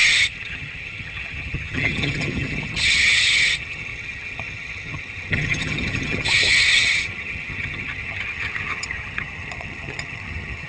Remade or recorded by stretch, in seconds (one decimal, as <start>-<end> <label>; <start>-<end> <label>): 0.0-10.7 remade